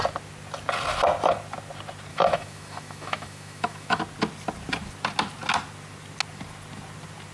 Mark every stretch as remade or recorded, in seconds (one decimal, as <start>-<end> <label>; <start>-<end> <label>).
0.0-2.1 recorded; 2.1-4.0 remade; 4.0-7.3 recorded